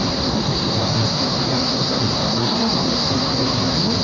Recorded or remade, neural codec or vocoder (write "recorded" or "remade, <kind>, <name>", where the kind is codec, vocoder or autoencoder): remade, codec, SNAC